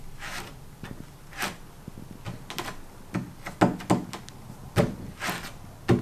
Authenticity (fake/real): real